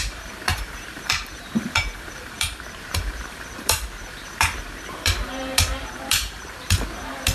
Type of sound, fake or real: fake